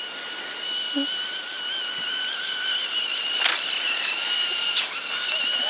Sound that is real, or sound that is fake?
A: real